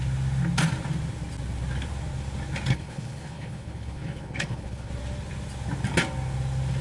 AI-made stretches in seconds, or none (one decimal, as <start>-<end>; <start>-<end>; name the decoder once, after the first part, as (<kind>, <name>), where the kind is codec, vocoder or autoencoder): 2.7-4.9 (codec, HILCodec)